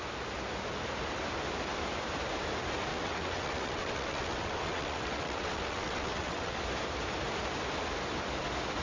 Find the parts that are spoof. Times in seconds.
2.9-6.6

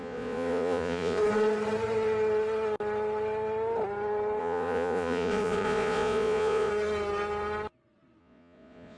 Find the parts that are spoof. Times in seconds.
0.0-1.2; 4.4-6.7; 8.2-9.0

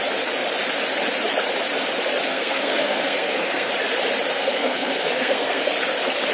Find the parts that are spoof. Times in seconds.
2.3-3.7; 4.4-5.6

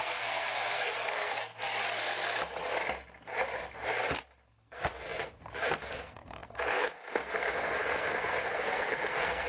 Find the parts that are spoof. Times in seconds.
0.0-1.5; 4.5-9.5

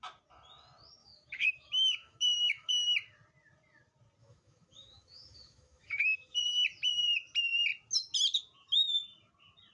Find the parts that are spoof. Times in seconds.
1.0-2.7; 4.2-6.0

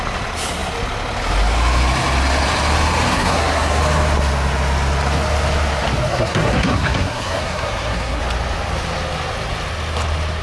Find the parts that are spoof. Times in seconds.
3.1-3.8; 6.1-8.2